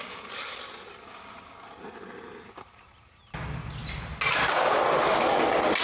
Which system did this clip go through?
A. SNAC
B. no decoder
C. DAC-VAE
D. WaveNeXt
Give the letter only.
B